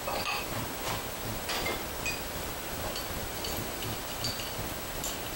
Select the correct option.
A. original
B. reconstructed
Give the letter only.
A